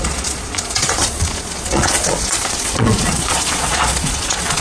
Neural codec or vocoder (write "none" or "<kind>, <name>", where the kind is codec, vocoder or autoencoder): vocoder, Vocos